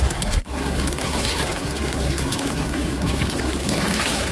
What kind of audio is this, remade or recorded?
remade